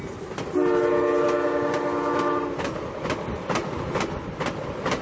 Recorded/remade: recorded